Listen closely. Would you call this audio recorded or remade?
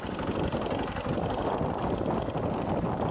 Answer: recorded